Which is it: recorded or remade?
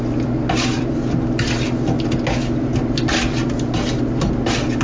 recorded